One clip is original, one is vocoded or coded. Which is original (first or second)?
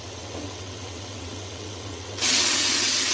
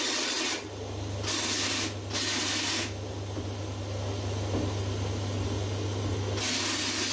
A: second